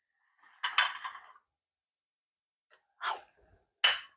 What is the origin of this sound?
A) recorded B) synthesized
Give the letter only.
A